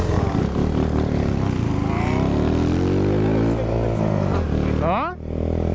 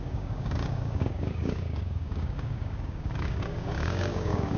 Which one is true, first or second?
first